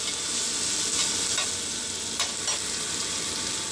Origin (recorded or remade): recorded